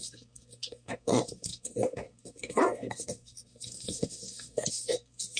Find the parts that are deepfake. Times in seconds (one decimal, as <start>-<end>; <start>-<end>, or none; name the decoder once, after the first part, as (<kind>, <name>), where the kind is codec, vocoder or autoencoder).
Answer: 0.0-5.4 (codec, SNAC)